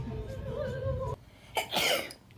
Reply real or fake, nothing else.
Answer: fake